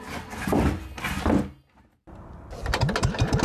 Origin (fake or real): real